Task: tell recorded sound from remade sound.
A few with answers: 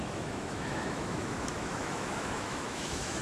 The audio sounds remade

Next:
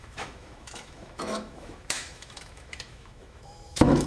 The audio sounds remade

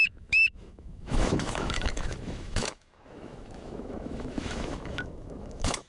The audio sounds remade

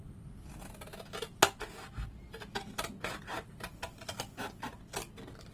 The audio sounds recorded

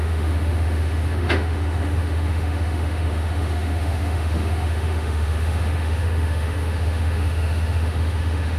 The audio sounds remade